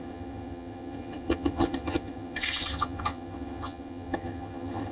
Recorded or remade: remade